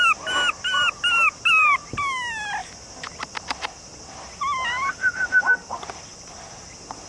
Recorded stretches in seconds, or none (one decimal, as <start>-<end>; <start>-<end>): 0.0-7.1

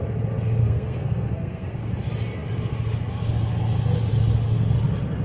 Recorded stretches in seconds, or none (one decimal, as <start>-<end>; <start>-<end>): 0.0-0.6; 1.9-5.2

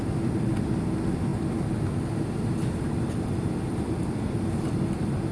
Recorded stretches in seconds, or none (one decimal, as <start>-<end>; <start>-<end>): 0.0-5.3

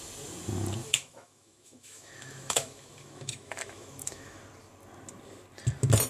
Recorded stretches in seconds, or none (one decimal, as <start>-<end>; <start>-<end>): 0.0-0.8; 4.4-6.1

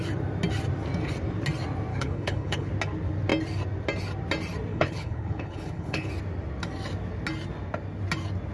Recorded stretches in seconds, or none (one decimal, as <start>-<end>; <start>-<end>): 0.0-1.9; 2.7-4.7; 6.1-8.5

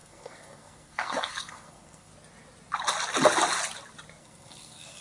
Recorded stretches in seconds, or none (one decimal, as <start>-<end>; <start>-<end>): 2.1-4.2